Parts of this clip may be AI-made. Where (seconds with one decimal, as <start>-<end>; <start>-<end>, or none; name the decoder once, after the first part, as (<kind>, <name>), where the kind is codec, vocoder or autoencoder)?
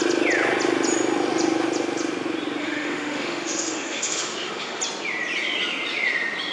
2.6-4.8 (autoencoder, DAC-VAE)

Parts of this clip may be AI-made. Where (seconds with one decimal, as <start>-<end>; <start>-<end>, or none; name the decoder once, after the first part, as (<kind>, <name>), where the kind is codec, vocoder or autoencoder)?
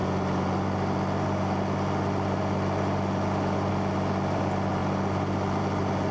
none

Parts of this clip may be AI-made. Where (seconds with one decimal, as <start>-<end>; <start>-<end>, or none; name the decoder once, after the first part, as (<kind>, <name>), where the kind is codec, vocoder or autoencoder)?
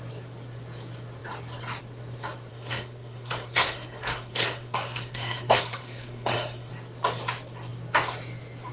2.5-6.7 (codec, SNAC)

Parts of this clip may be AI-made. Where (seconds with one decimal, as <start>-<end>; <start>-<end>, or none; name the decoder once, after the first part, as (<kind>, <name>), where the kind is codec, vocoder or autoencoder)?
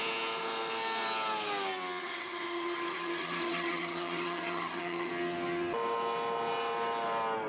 2.0-5.1 (vocoder, HiFi-GAN)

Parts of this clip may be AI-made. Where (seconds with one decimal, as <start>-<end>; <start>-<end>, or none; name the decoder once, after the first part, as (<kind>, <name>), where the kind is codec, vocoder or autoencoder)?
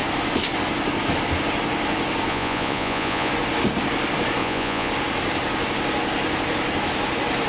2.3-3.3 (vocoder, Vocos); 4.4-4.9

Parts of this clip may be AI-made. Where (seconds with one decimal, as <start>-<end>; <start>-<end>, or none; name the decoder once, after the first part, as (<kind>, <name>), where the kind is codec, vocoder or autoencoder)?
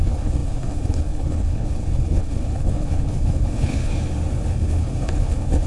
0.0-3.9 (codec, HILCodec); 4.5-5.7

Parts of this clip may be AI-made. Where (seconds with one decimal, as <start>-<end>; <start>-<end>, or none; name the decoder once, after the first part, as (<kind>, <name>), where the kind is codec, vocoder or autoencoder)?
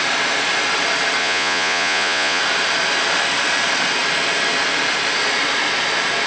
1.2-2.4 (vocoder, Vocos)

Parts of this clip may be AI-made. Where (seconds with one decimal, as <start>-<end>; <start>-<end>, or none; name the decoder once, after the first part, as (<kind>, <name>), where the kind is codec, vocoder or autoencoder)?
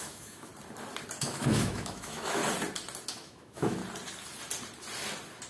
0.0-0.5 (autoencoder, DAC-VAE); 1.2-2.4; 3.1-3.8